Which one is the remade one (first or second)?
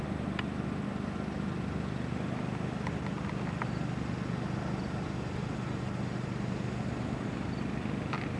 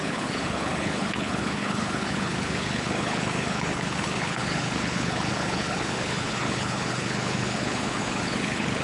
second